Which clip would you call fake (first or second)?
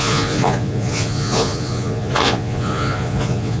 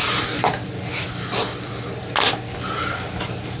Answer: first